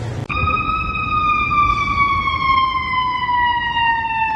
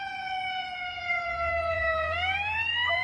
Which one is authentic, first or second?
first